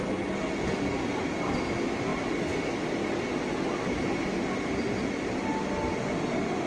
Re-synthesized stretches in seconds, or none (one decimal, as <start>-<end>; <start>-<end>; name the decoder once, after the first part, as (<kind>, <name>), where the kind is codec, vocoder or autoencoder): none